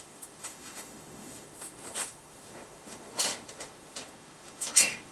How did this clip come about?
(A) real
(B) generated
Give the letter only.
B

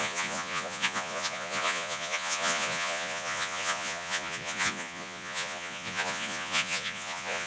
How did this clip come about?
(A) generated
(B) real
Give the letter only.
A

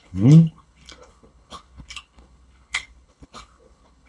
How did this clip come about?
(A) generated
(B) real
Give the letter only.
A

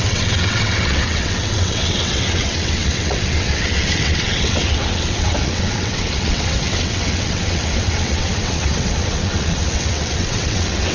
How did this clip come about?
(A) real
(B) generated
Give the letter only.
B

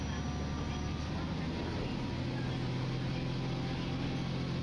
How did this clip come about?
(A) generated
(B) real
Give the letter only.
B